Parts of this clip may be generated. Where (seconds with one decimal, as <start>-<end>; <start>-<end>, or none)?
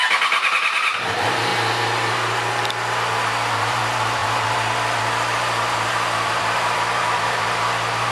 none